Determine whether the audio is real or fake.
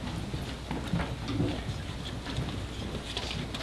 real